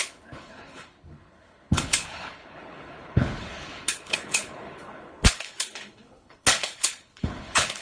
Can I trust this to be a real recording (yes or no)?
no